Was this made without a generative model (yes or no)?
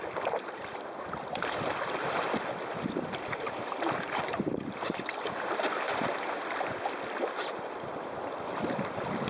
no